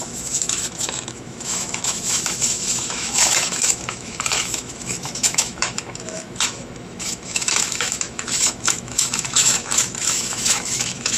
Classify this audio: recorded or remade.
remade